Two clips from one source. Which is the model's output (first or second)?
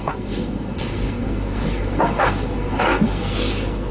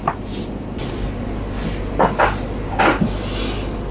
first